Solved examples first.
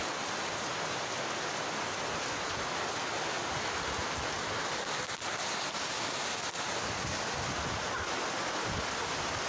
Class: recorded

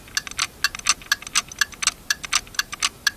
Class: recorded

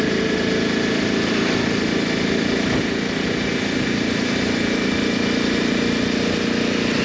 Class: recorded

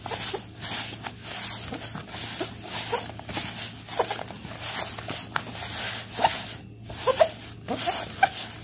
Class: recorded